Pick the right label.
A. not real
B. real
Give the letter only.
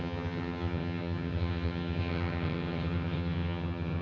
A